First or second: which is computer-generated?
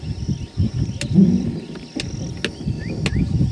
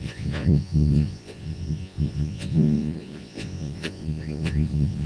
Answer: second